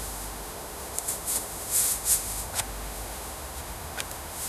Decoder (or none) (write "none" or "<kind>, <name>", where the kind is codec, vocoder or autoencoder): autoencoder, DAC-VAE